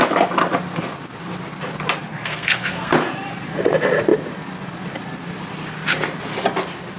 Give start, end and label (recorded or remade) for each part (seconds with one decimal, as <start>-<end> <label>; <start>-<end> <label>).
0.0-2.1 recorded; 2.1-2.9 remade; 2.9-7.0 recorded